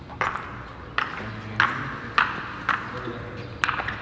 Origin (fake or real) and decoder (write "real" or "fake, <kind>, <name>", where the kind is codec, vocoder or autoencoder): real